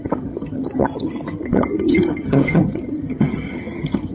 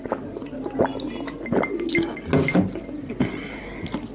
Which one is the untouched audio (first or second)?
second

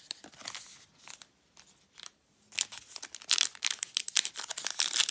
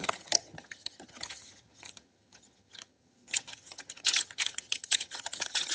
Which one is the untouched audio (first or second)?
first